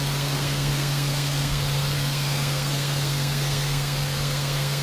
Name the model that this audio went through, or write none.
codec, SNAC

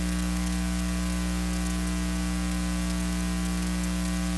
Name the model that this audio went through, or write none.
none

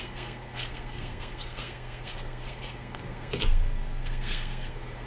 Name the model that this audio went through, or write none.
codec, SNAC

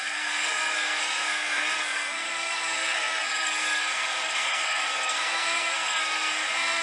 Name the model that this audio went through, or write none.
codec, SNAC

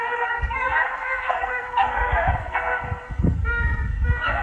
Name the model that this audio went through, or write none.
codec, SNAC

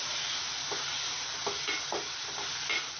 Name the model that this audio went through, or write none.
none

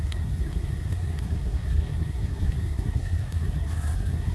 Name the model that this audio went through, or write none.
codec, SNAC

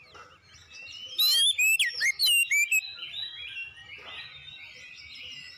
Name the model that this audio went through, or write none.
none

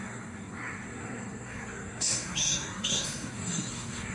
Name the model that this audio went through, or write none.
codec, SNAC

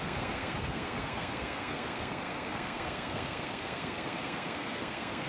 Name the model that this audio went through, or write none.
codec, SNAC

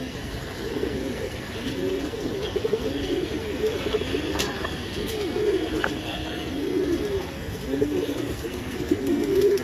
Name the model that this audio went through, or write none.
codec, SNAC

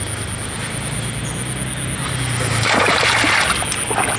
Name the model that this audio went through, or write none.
none